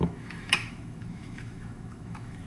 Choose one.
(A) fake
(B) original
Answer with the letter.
A